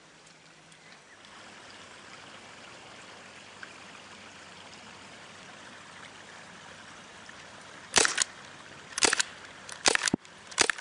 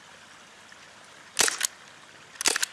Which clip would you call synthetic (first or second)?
first